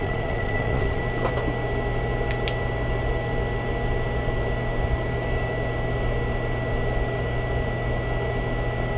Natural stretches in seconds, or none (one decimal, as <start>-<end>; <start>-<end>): 1.0-9.0